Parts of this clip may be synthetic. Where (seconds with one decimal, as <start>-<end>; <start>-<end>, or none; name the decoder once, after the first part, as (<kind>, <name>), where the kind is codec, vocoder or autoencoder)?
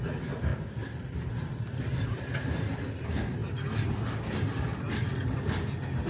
none